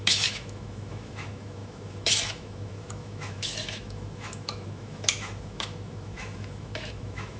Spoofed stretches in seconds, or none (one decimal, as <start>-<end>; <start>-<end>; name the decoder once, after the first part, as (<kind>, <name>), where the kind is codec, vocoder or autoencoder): 0.0-7.4 (autoencoder, DAC-VAE)